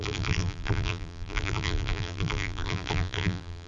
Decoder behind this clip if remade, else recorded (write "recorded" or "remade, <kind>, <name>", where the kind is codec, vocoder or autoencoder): remade, vocoder, BigVGAN v2